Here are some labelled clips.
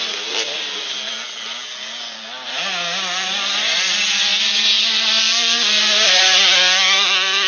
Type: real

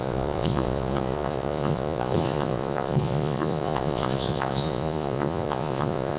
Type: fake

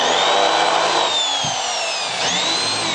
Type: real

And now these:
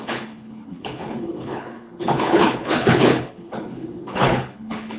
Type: fake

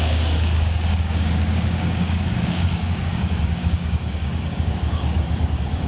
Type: fake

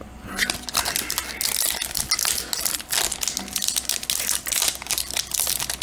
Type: real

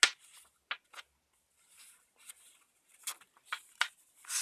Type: real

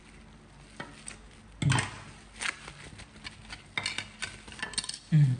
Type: real